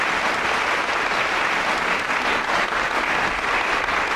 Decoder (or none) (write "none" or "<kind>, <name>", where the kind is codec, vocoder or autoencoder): none